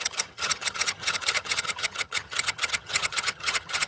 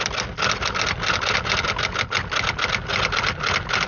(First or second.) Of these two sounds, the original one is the second